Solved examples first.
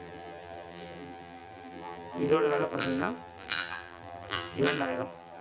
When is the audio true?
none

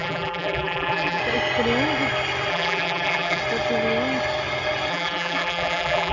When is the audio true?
1.2-2.5; 3.4-4.9

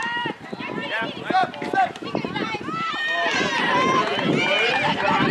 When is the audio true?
1.4-2.9

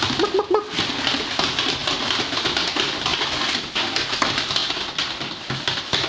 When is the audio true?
0.0-1.8; 2.5-3.1; 3.8-6.1

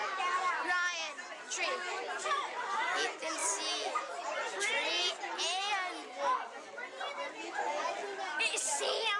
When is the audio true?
0.0-9.2